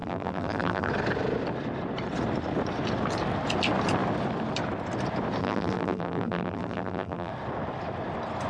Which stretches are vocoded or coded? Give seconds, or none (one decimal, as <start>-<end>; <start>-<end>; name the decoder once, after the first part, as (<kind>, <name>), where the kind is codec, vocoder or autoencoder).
0.0-0.9 (vocoder, BigVGAN v2); 5.4-7.3